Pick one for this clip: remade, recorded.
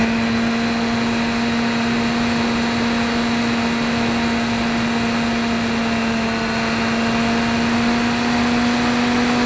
recorded